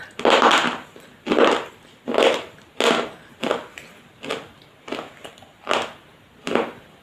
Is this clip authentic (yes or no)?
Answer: yes